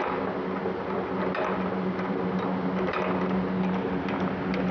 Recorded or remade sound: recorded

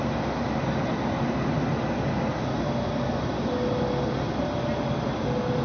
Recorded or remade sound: recorded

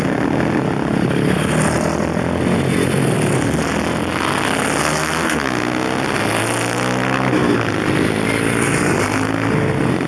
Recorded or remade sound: recorded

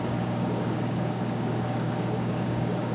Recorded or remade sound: remade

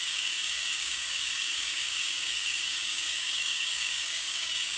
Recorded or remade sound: remade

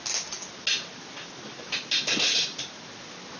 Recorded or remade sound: recorded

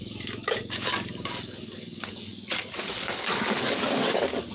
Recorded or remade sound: remade